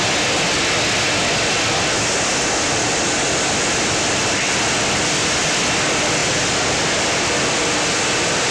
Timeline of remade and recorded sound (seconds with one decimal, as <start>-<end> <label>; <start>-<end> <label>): 0.0-8.5 recorded